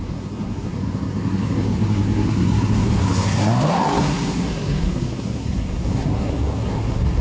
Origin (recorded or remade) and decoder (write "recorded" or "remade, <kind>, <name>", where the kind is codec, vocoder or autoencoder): remade, codec, SNAC